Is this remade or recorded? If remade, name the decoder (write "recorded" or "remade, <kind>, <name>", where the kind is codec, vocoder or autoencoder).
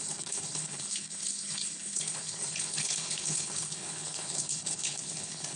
remade, codec, HILCodec